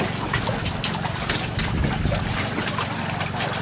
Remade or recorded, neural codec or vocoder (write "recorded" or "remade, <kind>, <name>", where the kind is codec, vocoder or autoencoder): recorded